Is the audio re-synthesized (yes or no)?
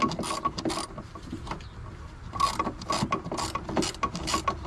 no